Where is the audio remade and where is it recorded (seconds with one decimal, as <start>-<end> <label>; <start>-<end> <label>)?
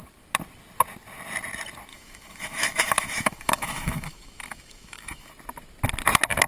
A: 0.0-1.9 recorded; 1.9-5.3 remade; 5.3-6.5 recorded